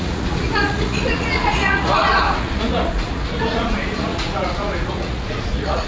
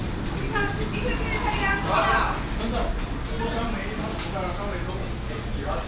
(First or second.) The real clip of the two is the second